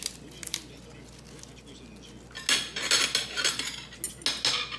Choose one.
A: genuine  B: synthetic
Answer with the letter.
A